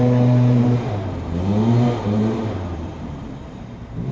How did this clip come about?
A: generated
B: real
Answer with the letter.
A